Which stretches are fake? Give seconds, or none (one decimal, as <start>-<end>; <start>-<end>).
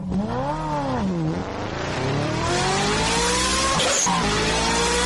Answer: 1.4-2.5; 3.5-4.1